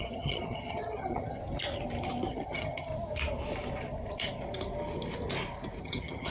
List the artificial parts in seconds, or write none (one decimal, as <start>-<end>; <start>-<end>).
0.0-1.4; 2.3-2.9; 5.8-6.3